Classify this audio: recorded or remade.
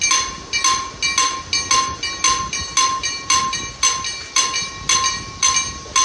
recorded